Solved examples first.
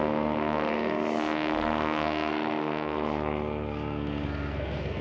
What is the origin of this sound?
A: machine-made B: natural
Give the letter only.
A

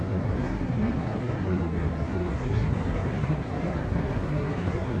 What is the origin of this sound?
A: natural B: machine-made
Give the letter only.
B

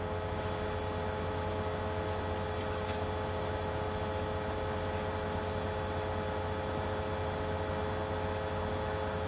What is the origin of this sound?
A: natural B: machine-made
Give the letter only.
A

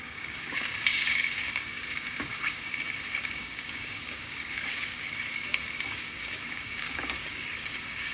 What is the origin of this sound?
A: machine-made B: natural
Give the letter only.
A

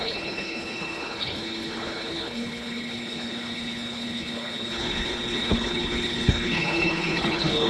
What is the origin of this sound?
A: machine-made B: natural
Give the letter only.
A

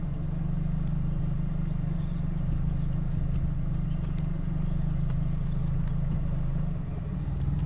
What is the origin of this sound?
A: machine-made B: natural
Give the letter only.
B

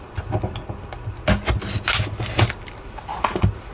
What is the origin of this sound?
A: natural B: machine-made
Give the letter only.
A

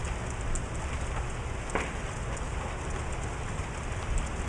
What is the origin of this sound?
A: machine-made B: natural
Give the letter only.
B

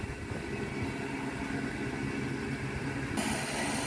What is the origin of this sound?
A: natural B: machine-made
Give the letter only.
A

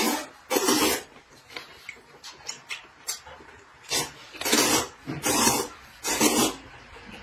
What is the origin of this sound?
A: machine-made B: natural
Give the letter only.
B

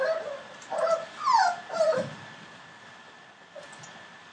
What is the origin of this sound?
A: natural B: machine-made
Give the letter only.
A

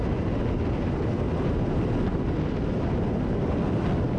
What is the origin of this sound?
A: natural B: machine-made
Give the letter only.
A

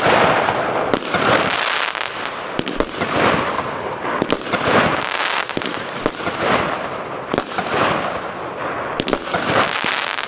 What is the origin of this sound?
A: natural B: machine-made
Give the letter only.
A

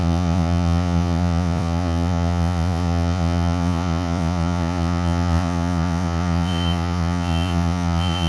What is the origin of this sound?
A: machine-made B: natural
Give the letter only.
A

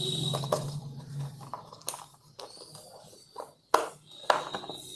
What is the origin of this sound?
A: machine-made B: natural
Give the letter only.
B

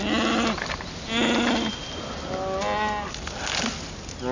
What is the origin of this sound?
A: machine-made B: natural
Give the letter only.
B